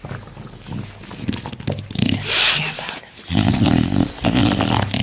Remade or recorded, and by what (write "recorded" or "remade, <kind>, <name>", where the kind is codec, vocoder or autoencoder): recorded